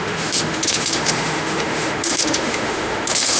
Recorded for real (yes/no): no